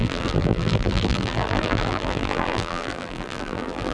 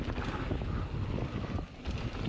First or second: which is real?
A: second